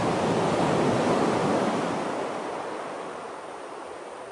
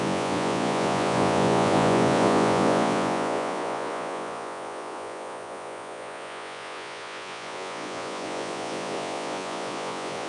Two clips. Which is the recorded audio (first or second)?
first